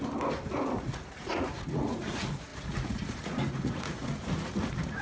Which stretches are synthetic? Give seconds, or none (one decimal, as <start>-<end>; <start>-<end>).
0.5-5.0